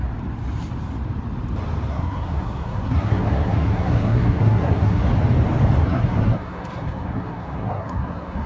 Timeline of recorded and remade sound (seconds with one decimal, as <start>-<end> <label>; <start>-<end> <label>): 0.0-1.9 recorded; 1.9-5.1 remade; 5.1-5.8 recorded; 5.8-8.5 remade